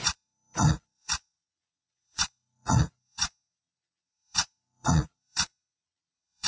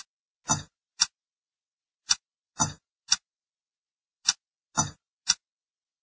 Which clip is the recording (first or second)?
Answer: second